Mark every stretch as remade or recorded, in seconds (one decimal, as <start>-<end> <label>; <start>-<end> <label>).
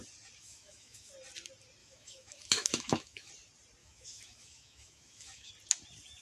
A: 0.0-0.4 recorded; 0.4-1.1 remade; 1.1-1.8 recorded; 1.8-3.3 remade; 3.3-3.8 recorded; 3.8-5.5 remade; 5.5-6.2 recorded